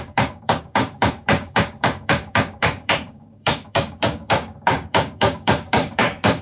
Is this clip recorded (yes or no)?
no